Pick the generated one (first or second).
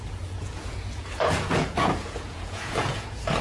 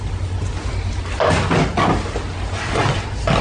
first